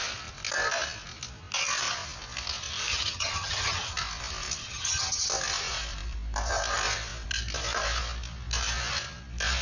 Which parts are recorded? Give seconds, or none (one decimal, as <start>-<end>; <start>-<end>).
0.0-2.9; 3.9-4.6; 5.3-9.6